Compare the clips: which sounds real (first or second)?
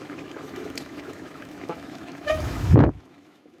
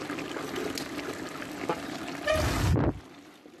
second